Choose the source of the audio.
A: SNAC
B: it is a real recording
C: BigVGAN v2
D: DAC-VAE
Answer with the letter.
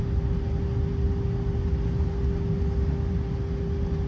B